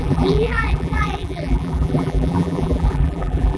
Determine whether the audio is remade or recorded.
remade